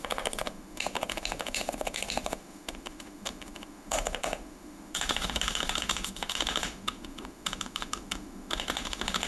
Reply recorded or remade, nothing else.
remade